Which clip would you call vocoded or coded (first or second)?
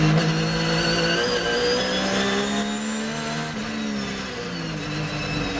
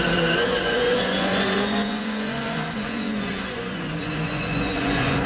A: second